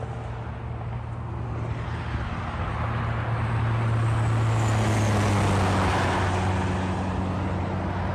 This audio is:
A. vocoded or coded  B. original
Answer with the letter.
B